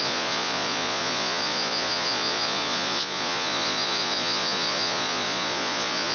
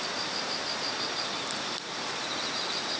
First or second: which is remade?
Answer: first